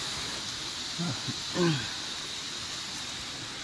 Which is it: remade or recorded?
recorded